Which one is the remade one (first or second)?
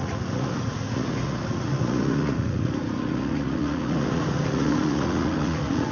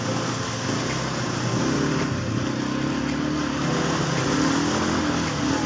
first